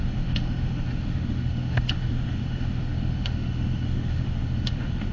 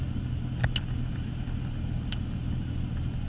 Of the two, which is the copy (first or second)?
first